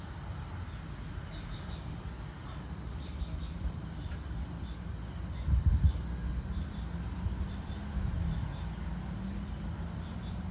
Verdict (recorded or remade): recorded